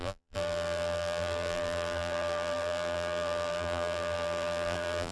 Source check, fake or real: fake